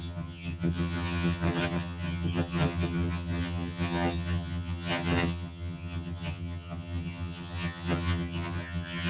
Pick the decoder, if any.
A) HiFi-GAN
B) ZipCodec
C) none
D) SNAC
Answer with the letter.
A